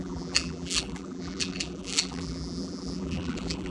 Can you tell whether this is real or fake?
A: fake